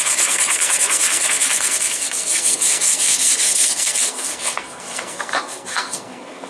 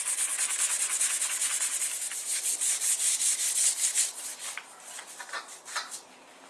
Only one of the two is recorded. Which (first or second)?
second